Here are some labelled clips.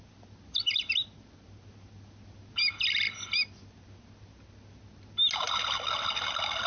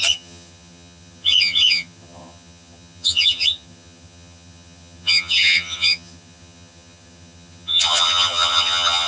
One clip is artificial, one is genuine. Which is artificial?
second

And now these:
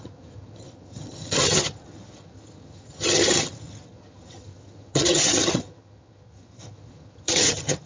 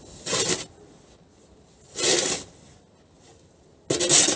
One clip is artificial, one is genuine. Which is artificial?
first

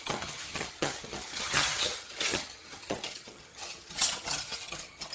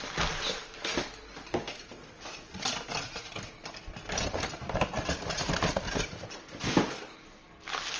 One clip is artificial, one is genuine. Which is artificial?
first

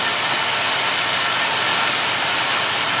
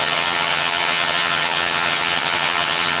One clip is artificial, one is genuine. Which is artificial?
second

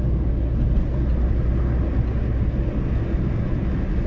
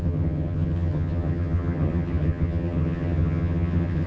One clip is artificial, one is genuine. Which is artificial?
second